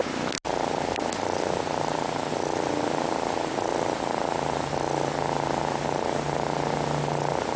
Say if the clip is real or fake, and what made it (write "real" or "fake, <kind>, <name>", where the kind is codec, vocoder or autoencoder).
real